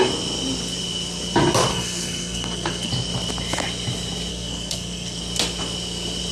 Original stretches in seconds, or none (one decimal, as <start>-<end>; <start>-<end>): 0.0-1.7; 2.9-4.3; 5.2-6.3